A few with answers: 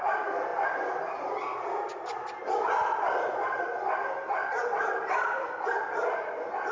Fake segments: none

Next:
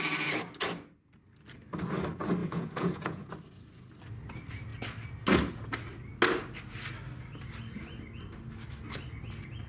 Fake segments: 2.4-3.3 (vocoder, Vocos)

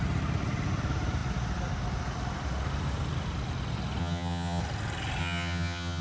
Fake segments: 4.0-4.6 (vocoder, HiFi-GAN); 5.2-6.0